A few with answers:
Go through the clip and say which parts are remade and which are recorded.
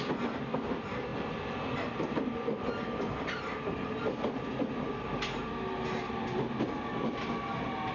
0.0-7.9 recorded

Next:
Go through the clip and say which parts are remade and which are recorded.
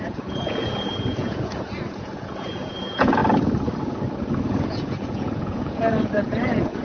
0.0-3.2 remade; 3.2-4.4 recorded; 4.4-6.8 remade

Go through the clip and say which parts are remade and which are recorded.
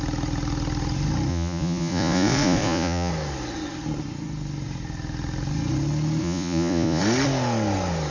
0.0-1.3 recorded; 1.3-3.1 remade; 3.1-6.2 recorded; 6.2-7.0 remade; 7.0-8.1 recorded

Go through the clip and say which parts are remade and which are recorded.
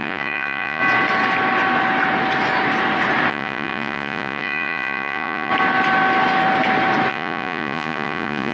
0.0-0.8 remade; 0.8-3.3 recorded; 3.3-5.5 remade; 5.5-7.1 recorded; 7.1-8.5 remade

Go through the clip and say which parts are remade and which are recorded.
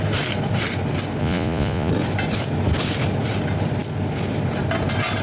0.0-1.2 recorded; 1.2-1.9 remade; 1.9-5.2 recorded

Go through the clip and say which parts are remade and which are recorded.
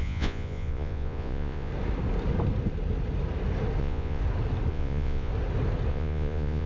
0.0-1.7 remade; 1.7-3.8 recorded; 3.8-4.2 remade; 4.2-4.7 recorded; 4.7-5.3 remade; 5.3-5.9 recorded; 5.9-6.7 remade